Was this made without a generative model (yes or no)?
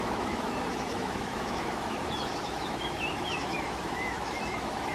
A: no